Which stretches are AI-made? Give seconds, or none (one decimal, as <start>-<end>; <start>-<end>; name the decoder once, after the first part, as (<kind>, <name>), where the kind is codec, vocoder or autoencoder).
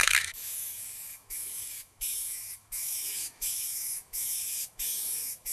0.0-5.5 (autoencoder, DAC-VAE)